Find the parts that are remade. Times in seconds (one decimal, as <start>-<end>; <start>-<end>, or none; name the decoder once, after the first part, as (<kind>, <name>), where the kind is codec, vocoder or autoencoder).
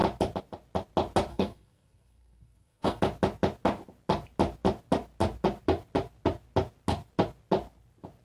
1.3-3.0 (codec, SNAC)